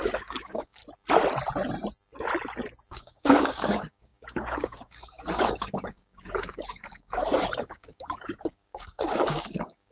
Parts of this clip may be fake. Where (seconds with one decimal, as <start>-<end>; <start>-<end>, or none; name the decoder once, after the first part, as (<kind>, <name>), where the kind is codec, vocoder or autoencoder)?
0.0-0.8 (codec, DAC); 2.9-9.9